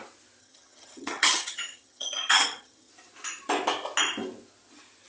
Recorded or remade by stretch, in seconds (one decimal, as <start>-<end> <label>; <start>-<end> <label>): 0.0-0.4 recorded; 0.4-2.9 remade; 2.9-5.1 recorded